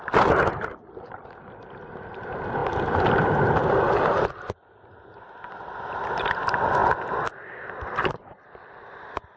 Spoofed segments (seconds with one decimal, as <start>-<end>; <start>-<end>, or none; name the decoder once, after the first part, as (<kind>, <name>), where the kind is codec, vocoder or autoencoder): none